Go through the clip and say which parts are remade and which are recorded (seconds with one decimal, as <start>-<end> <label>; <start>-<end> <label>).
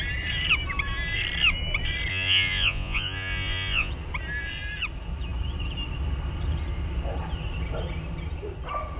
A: 0.0-2.1 recorded; 2.1-3.9 remade; 3.9-9.0 recorded